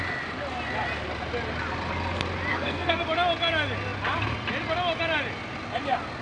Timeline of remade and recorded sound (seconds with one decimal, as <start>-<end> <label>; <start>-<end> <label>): 0.0-2.5 recorded; 2.5-3.0 remade; 3.0-6.2 recorded